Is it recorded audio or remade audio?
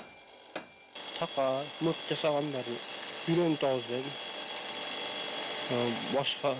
recorded